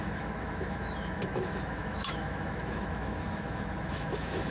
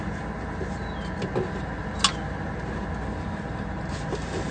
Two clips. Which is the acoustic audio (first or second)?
second